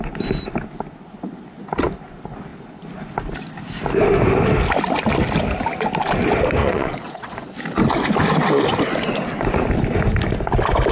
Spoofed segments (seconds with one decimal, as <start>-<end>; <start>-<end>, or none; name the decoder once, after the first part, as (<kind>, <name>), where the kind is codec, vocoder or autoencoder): 6.6-7.5 (vocoder, Vocos)